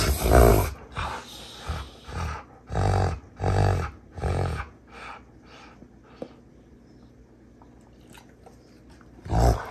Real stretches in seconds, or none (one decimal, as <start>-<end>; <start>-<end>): 0.0-4.1; 4.8-9.7